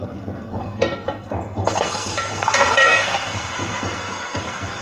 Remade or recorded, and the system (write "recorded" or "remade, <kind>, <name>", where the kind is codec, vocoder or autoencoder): remade, codec, SNAC